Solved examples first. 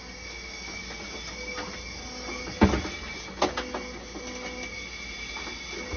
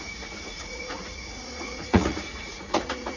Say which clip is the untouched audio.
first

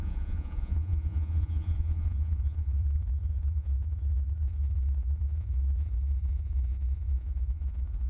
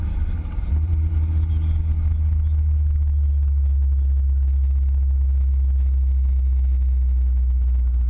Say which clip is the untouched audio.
second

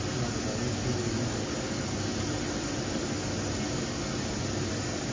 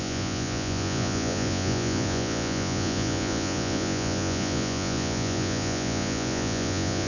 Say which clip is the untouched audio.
first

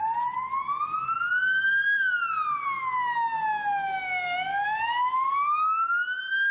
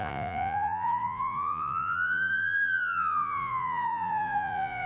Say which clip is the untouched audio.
first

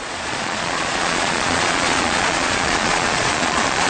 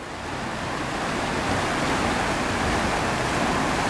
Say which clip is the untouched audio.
second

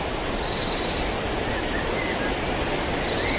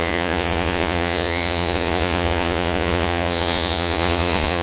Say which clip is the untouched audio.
first